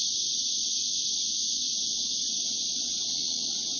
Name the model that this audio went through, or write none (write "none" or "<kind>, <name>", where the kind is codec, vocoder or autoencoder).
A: none